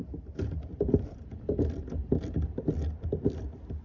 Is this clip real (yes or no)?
no